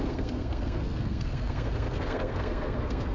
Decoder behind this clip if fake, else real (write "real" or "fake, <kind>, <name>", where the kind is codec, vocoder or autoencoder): fake, codec, SNAC